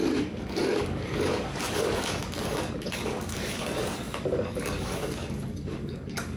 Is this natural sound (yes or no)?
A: no